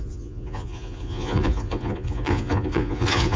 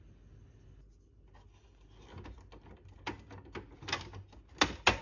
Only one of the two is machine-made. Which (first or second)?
first